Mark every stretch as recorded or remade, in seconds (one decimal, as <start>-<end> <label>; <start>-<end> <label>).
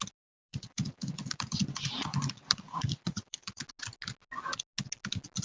0.0-0.4 recorded; 0.4-3.6 remade; 3.6-5.4 recorded